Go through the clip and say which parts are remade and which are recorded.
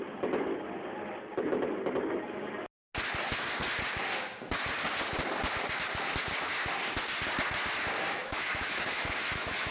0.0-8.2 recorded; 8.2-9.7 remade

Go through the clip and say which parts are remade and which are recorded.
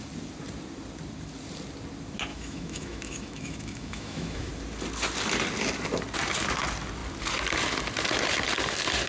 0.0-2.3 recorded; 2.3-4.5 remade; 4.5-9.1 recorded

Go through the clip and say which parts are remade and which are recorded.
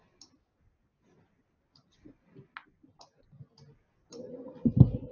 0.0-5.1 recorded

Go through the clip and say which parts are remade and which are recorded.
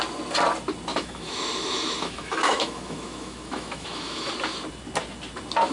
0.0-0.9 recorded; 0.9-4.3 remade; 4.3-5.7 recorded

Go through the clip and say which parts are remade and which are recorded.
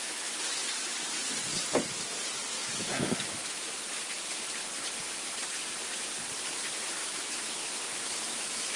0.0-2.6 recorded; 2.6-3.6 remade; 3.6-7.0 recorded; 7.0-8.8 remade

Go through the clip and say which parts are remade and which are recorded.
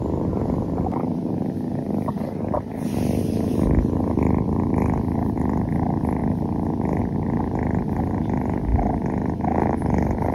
0.0-10.3 recorded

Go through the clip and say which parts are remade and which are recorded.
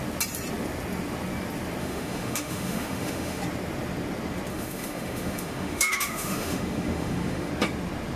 0.0-1.8 recorded; 1.8-3.4 remade; 3.4-4.5 recorded; 4.5-7.5 remade; 7.5-8.2 recorded